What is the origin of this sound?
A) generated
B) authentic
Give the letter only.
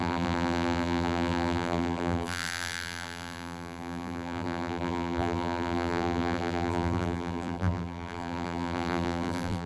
A